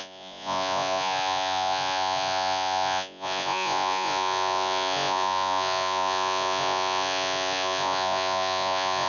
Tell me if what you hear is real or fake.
fake